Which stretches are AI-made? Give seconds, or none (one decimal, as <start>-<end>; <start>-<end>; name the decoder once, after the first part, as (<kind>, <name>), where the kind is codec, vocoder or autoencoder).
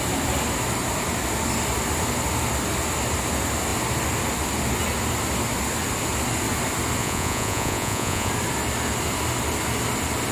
7.0-8.3 (vocoder, Vocos)